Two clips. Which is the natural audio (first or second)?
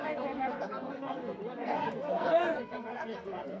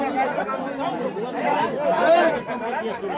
second